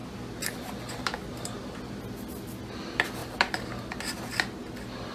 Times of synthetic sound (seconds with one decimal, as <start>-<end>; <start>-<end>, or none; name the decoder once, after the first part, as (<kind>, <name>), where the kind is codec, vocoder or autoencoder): none